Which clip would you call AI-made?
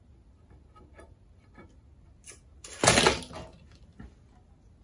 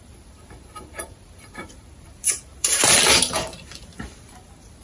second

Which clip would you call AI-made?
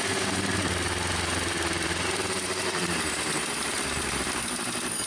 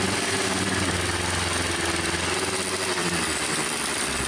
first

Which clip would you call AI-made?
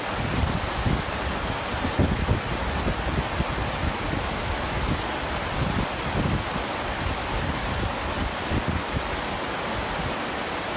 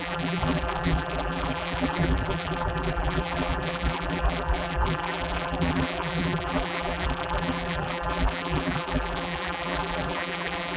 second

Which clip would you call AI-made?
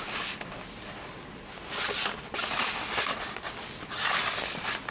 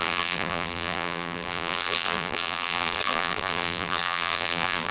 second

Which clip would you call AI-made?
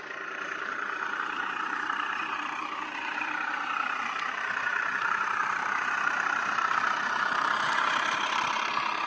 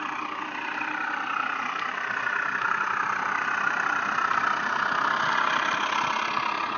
first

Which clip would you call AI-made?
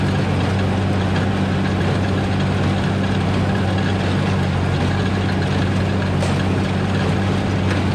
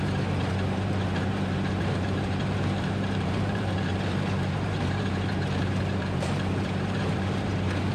second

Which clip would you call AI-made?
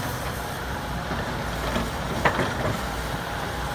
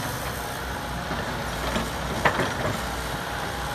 first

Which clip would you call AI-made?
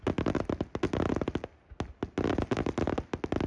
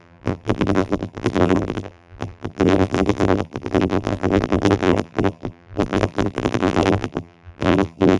second